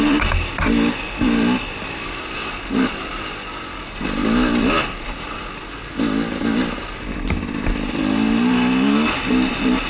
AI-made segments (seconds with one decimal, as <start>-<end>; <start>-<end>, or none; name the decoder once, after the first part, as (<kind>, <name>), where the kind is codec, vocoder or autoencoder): none